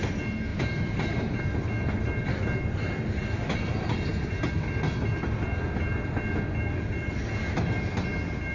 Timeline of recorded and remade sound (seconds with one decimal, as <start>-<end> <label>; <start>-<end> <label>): 0.0-0.5 recorded; 0.5-1.4 remade; 1.4-8.5 recorded